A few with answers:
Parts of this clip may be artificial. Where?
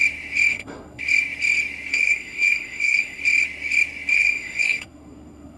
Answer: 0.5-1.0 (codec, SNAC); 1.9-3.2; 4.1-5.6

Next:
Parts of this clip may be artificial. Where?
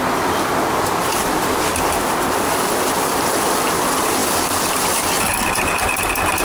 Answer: none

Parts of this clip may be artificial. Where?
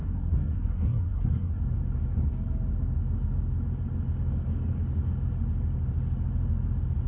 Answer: 0.0-1.6 (codec, SNAC)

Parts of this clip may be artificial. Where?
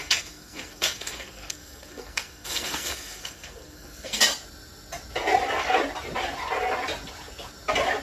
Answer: 0.0-4.2 (codec, SNAC)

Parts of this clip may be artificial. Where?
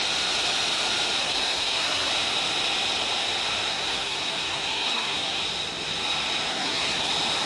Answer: 1.2-2.1 (codec, SNAC); 3.7-5.4; 6.5-7.1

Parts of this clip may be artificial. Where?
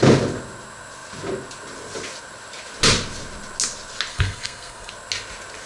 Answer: 4.1-4.9 (codec, SNAC)